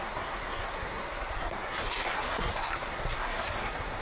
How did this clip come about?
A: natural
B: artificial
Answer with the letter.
B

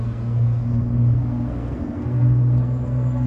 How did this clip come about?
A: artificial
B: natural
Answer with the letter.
A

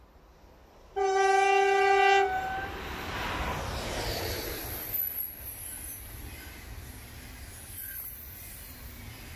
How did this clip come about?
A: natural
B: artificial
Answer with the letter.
A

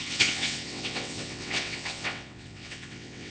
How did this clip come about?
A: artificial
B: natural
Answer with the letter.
A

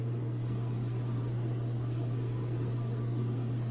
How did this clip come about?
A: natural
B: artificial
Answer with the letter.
B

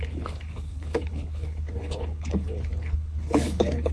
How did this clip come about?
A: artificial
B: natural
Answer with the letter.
A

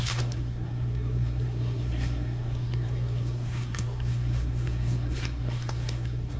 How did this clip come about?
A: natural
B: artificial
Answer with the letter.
B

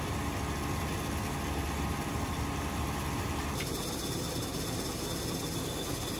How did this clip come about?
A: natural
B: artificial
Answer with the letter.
A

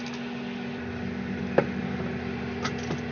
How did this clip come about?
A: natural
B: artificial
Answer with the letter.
A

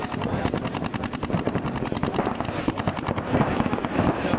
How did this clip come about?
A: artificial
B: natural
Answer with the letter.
B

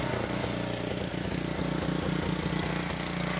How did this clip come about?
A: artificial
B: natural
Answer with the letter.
B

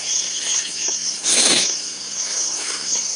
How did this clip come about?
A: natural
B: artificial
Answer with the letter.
B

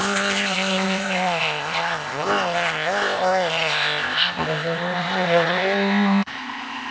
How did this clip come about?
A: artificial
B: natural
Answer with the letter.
A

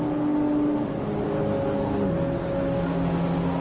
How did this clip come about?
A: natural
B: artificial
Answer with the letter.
A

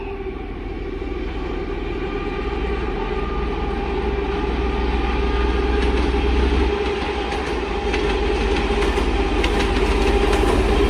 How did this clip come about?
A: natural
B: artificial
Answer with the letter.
A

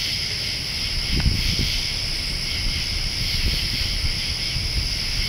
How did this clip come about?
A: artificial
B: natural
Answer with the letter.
B